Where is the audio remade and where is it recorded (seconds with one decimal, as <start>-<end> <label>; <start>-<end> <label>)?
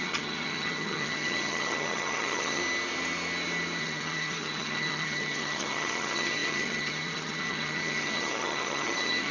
0.0-2.6 remade; 2.6-3.8 recorded; 3.8-9.3 remade